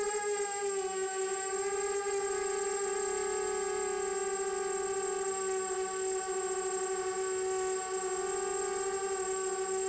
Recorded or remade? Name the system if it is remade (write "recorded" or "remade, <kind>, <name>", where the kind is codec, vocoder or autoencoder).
recorded